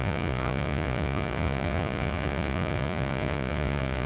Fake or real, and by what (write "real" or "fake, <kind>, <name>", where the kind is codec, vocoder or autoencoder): fake, vocoder, Vocos